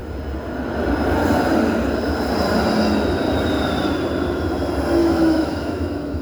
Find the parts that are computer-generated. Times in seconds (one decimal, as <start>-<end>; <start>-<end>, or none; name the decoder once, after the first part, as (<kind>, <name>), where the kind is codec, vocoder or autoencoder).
5.0-6.2 (autoencoder, DAC-VAE)

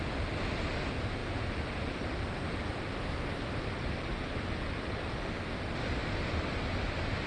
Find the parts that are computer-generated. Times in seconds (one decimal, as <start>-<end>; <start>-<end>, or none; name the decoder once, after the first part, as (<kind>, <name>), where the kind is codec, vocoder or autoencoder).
none

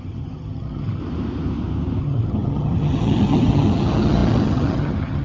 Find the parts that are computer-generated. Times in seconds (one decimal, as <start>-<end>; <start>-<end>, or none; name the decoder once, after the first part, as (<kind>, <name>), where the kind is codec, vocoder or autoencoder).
0.0-1.0 (vocoder, HiFi-GAN); 2.0-5.2

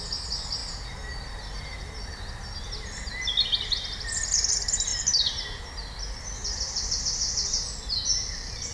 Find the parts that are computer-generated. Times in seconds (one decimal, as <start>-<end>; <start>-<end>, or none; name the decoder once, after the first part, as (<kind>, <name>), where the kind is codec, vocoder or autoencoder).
6.4-7.0 (vocoder, BigVGAN v2)

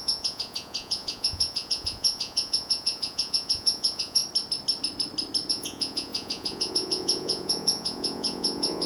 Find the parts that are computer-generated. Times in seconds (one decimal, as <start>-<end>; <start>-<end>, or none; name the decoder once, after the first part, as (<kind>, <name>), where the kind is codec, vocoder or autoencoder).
0.0-4.2 (vocoder, Vocos); 5.5-8.9

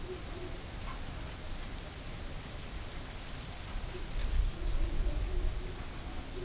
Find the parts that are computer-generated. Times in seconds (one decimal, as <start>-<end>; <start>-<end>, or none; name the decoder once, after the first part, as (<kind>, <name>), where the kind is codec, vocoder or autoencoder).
4.2-5.3 (codec, DAC)

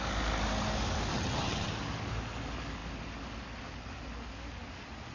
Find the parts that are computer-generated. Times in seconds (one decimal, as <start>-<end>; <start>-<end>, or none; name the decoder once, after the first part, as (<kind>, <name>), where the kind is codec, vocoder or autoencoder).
1.1-1.7 (vocoder, HiFi-GAN)

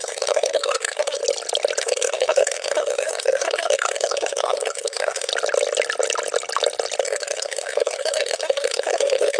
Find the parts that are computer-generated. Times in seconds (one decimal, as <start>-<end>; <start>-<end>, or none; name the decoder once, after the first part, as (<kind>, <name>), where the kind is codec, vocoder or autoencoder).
0.0-1.2 (codec, SNAC); 1.8-5.3; 7.0-9.4